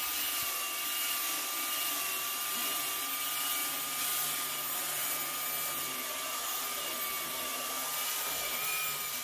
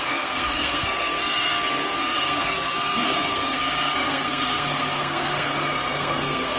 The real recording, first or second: first